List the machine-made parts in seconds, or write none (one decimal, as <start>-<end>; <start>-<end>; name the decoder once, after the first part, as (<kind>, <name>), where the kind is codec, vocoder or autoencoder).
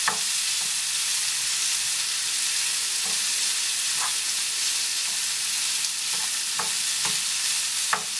none